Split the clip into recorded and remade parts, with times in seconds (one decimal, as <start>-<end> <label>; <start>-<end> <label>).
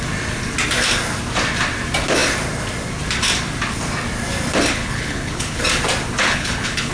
0.0-4.8 recorded; 4.8-5.6 remade; 5.6-6.2 recorded; 6.2-6.9 remade